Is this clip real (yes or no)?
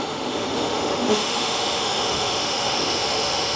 no